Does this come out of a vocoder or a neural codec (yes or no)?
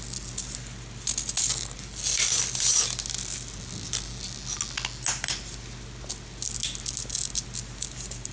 no